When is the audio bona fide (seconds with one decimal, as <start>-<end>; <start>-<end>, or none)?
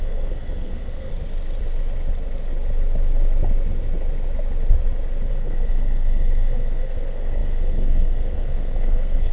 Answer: 1.1-5.3